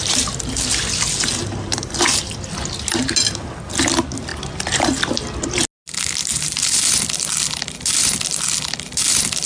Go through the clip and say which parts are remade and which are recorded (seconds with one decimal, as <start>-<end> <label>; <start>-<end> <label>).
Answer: 0.0-6.2 recorded; 6.2-6.8 remade; 6.8-9.5 recorded